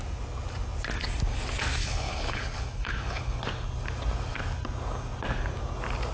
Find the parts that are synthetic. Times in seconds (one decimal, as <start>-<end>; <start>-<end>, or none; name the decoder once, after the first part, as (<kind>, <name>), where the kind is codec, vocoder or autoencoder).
1.8-3.4 (codec, HILCodec)